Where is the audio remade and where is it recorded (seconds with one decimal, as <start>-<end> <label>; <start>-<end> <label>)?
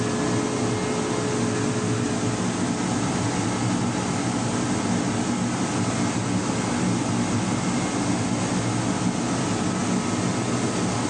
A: 0.0-11.1 recorded